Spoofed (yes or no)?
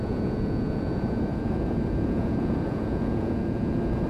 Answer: yes